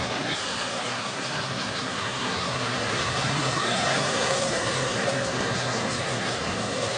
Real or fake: fake